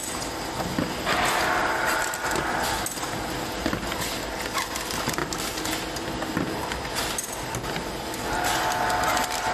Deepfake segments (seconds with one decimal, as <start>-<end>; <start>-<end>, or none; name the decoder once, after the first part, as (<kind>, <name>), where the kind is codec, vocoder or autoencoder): none